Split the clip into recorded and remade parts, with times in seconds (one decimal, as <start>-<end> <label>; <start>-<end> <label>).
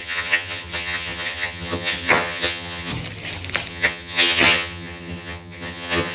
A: 0.0-2.9 remade; 2.9-3.7 recorded; 3.7-6.1 remade